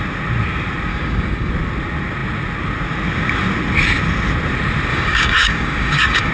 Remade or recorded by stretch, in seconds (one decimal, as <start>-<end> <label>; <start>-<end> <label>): 0.0-0.9 recorded; 0.9-1.5 remade; 1.5-4.9 recorded; 4.9-6.3 remade